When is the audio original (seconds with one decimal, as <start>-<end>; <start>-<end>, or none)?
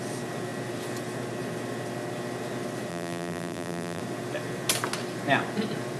0.0-2.9; 4.0-6.0